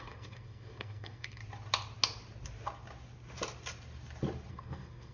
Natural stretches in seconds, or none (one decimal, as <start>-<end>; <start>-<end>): 1.4-4.5